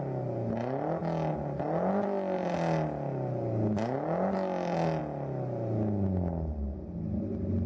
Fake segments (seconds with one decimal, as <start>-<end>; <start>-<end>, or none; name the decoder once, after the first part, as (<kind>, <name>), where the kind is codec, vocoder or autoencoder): none